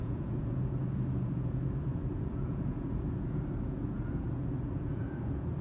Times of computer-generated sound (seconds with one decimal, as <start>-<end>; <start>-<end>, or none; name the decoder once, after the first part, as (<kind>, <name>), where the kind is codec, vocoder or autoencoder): 0.0-5.6 (vocoder, Vocos)